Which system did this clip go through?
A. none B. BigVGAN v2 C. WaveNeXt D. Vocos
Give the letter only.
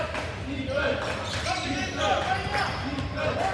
A